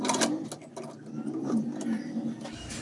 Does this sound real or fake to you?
real